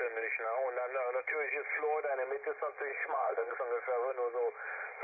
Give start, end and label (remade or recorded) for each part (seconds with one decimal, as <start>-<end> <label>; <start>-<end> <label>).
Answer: 0.0-2.9 recorded; 2.9-3.6 remade; 3.6-5.0 recorded